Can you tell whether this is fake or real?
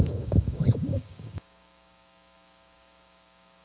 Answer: fake